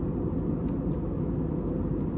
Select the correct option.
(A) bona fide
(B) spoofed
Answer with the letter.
A